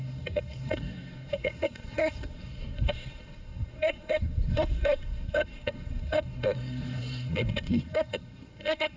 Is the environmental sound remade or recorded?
remade